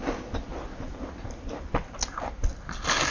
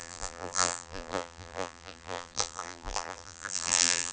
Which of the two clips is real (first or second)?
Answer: first